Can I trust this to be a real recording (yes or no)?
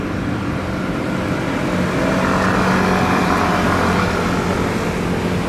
yes